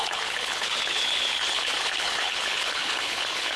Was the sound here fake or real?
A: fake